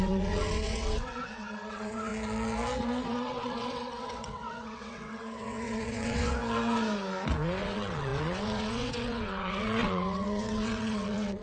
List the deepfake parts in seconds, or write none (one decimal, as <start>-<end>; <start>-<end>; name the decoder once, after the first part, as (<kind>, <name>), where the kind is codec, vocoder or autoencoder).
0.0-2.1 (vocoder, WaveNeXt); 3.1-6.4; 7.6-11.4